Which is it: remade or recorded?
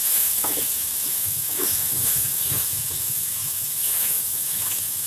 remade